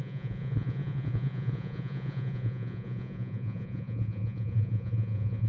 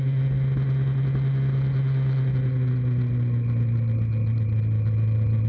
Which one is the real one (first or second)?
second